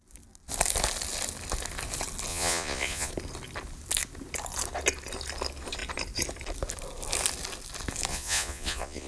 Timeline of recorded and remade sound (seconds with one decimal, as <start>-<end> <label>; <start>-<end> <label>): 0.0-2.3 recorded; 2.3-3.1 remade; 3.1-8.1 recorded; 8.1-9.1 remade

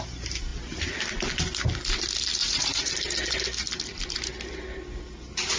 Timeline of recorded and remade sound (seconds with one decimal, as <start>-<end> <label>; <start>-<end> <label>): 0.0-2.4 recorded; 2.4-2.9 remade; 2.9-5.6 recorded

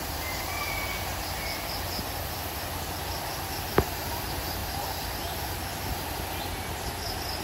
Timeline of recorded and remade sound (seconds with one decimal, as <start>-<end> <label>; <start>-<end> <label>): 0.0-7.4 recorded